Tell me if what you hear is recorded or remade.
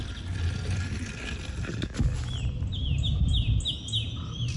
recorded